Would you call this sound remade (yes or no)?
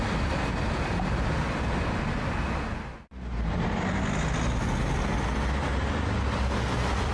no